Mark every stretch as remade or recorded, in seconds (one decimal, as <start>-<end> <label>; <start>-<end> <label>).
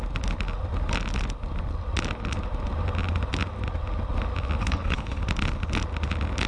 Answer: 0.0-4.6 recorded; 4.6-5.2 remade; 5.2-6.5 recorded